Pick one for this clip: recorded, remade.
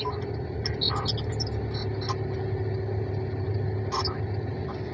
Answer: recorded